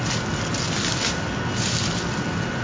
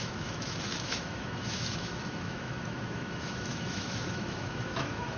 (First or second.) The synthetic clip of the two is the second